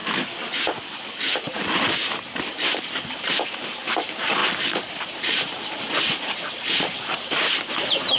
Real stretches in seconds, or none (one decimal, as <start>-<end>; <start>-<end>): 0.0-2.4